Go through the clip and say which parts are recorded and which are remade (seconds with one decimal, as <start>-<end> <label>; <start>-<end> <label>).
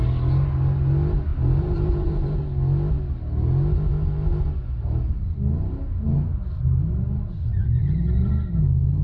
0.0-1.3 recorded; 1.3-2.4 remade; 2.4-7.8 recorded; 7.8-8.3 remade; 8.3-9.0 recorded